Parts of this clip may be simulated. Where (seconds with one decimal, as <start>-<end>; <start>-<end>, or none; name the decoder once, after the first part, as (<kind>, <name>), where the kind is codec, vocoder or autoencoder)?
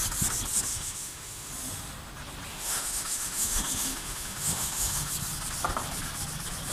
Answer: 0.7-1.5 (autoencoder, DAC-VAE); 2.5-5.1